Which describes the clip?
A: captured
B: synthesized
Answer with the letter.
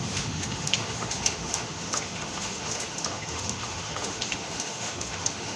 B